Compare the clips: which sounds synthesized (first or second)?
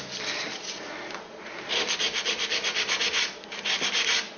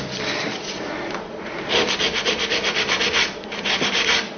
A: second